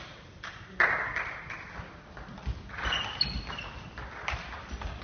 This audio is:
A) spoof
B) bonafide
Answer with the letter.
B